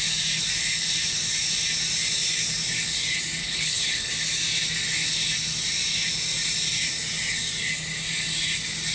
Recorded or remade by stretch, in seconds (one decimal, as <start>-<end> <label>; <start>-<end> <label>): 0.0-3.4 recorded; 3.4-4.1 remade; 4.1-8.9 recorded